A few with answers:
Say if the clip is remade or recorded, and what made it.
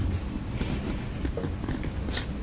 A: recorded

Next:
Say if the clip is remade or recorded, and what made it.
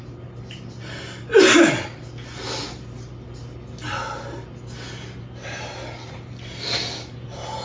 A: recorded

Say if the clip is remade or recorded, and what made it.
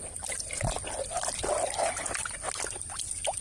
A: recorded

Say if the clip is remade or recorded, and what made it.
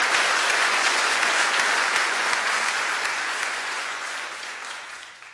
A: remade, vocoder, Vocos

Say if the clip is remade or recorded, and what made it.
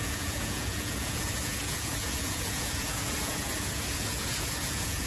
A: remade, vocoder, Vocos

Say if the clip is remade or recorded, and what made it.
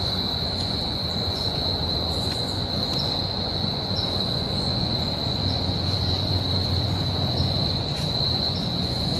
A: remade, vocoder, Vocos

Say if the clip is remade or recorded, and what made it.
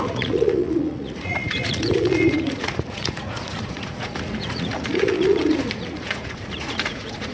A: remade, vocoder, Vocos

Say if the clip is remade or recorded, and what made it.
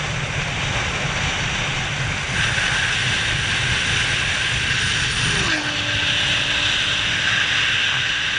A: recorded